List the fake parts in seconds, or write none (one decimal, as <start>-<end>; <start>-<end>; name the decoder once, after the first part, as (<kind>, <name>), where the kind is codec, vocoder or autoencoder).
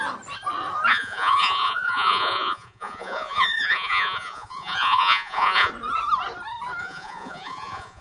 0.9-5.7 (vocoder, Vocos); 6.8-8.0